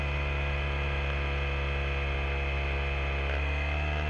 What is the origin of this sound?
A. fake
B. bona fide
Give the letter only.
B